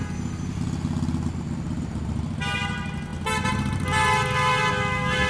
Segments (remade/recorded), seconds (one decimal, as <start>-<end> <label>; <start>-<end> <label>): 0.0-5.3 recorded